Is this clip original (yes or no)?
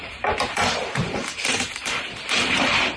no